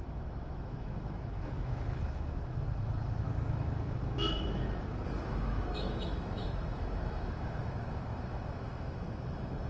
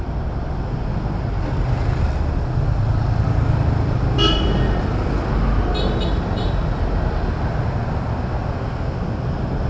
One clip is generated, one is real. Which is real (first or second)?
second